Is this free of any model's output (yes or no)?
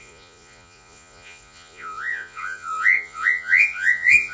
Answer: no